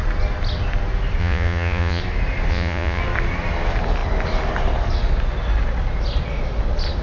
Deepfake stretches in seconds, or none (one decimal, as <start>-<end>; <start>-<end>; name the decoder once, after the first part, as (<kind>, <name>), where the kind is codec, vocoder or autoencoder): 1.2-2.0 (vocoder, Vocos); 2.5-3.0